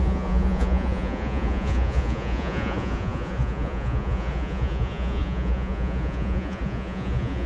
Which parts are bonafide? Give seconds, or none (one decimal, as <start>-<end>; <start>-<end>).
none